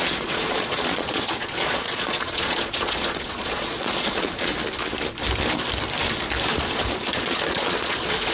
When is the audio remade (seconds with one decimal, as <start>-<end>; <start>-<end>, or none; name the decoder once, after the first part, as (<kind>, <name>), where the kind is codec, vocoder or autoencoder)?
0.0-4.5 (vocoder, Vocos); 6.5-8.3